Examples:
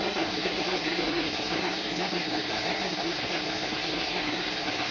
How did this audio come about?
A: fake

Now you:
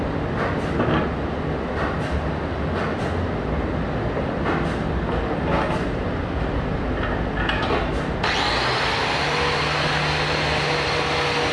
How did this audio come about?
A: real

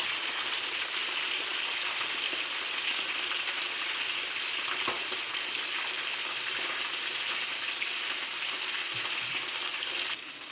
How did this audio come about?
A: real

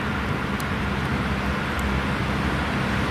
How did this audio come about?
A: real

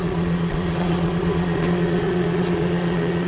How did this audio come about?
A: fake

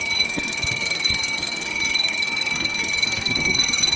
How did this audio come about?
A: fake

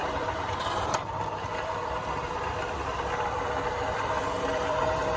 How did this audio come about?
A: fake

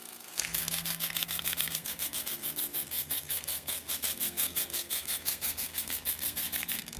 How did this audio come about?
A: fake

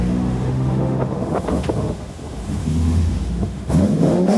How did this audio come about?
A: fake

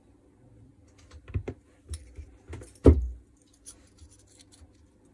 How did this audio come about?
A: real